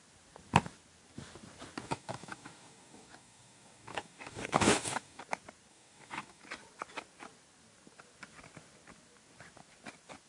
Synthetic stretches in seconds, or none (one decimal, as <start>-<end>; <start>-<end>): 1.8-5.2; 5.7-6.4